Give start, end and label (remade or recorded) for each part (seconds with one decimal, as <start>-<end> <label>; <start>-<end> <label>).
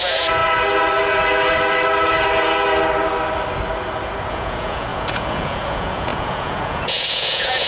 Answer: 0.0-0.4 remade; 0.4-4.3 recorded; 4.3-7.7 remade